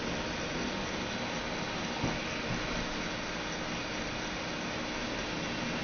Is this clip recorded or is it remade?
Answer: recorded